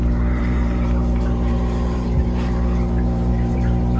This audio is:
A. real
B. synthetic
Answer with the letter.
B